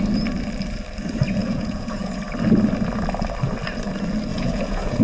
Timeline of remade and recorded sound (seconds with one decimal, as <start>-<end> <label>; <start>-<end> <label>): 0.0-1.4 recorded; 1.4-2.2 remade; 2.2-4.3 recorded; 4.3-5.0 remade